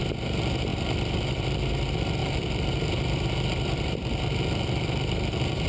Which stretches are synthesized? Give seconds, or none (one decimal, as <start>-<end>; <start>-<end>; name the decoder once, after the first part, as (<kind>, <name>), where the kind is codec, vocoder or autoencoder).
0.0-5.7 (vocoder, BigVGAN v2)